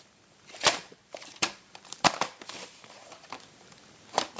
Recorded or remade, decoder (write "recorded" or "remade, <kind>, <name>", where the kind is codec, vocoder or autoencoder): remade, vocoder, BigVGAN v2